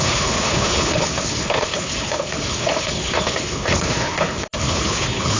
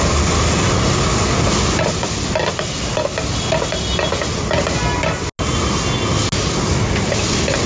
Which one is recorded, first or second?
second